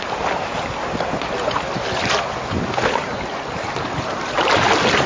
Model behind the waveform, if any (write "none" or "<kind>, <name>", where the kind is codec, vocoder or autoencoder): none